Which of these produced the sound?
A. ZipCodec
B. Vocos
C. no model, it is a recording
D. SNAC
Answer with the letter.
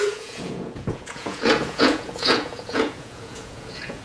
B